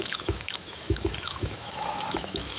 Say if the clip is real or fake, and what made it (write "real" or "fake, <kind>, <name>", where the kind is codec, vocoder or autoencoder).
fake, autoencoder, DAC-VAE